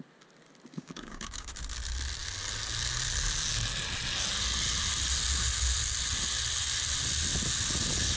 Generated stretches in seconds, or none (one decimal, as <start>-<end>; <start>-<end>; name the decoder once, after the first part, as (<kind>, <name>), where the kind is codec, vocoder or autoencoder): 0.7-1.5 (codec, DAC)